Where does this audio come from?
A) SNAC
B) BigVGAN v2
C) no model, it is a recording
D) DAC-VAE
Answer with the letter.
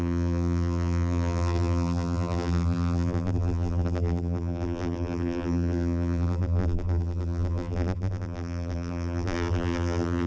B